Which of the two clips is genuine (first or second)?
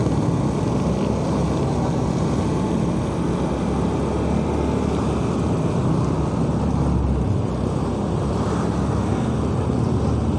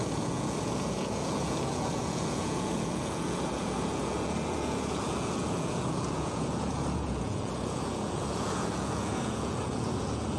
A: first